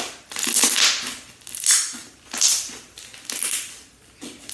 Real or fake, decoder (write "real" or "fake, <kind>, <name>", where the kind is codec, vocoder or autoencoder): real